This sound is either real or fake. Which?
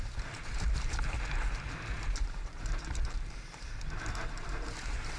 fake